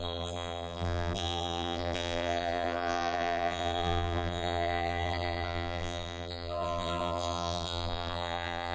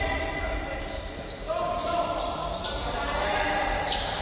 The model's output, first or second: first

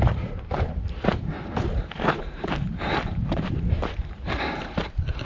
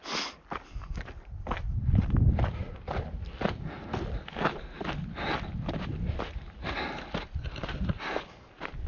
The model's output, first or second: first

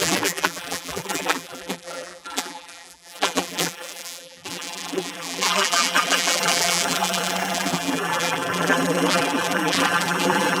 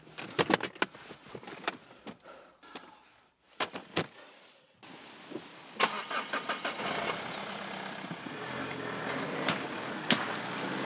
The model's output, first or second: first